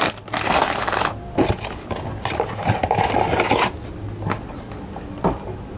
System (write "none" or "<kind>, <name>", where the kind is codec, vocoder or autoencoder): none